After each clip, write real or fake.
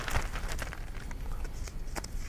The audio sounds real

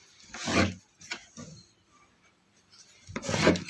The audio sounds real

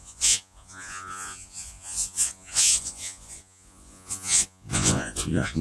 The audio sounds fake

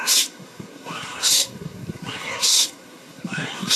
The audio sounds fake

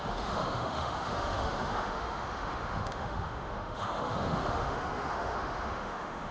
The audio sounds fake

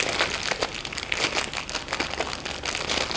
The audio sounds real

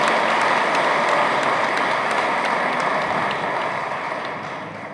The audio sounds real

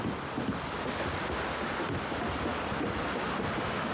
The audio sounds fake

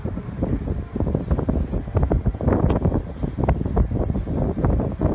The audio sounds real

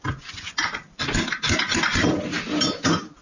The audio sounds real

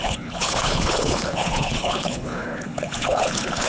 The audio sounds fake